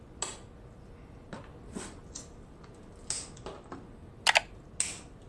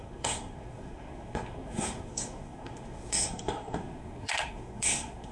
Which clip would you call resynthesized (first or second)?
second